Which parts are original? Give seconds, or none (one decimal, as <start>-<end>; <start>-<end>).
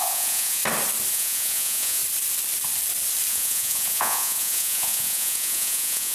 0.6-1.1; 2.0-3.3